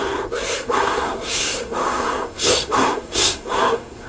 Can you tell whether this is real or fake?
fake